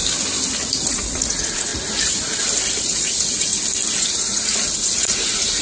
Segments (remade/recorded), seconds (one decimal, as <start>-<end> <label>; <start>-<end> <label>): 0.0-0.9 recorded; 0.9-1.7 remade; 1.7-2.8 recorded; 2.8-3.5 remade; 3.5-4.0 recorded; 4.0-5.6 remade